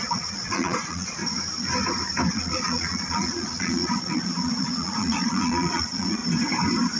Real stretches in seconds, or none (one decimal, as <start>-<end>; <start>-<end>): 1.2-2.3; 6.2-7.0